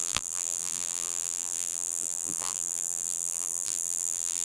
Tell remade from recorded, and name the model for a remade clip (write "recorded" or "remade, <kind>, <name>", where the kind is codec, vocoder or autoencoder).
remade, vocoder, BigVGAN v2